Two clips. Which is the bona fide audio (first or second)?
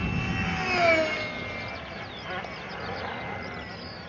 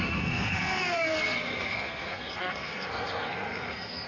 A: first